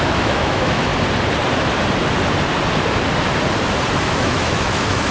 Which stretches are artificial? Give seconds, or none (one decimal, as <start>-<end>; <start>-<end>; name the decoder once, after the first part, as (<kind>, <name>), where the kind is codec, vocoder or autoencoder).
0.0-0.9 (autoencoder, DAC-VAE); 4.0-5.1